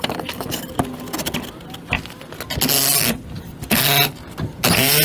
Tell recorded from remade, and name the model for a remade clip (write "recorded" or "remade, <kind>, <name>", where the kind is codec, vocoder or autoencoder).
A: recorded